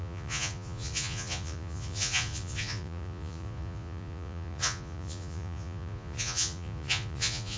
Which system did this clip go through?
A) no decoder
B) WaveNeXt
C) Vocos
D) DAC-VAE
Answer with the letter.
C